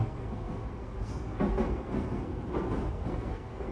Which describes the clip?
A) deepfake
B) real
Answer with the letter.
A